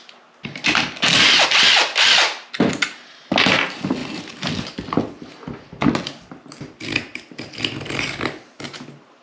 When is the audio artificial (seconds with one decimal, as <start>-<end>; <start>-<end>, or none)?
none

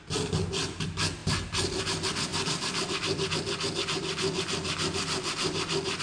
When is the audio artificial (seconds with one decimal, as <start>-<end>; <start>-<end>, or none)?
none

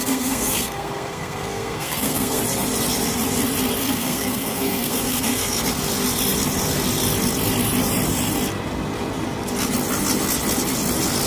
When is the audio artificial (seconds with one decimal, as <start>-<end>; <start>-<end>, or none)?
0.0-2.4; 3.8-5.6

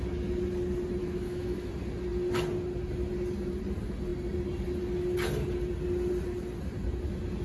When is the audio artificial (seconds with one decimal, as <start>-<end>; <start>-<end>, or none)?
1.0-1.7

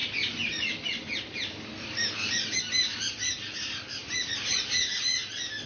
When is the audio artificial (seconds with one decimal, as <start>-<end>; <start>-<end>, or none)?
4.0-4.9

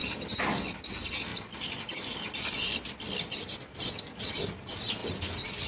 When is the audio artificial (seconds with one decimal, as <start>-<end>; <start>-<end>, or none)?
1.3-3.9; 5.0-5.7

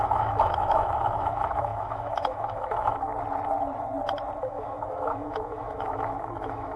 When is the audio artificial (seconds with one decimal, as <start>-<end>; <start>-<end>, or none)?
0.0-3.1; 4.4-6.8